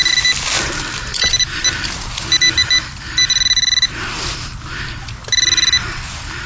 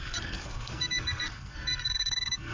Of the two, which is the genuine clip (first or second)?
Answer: first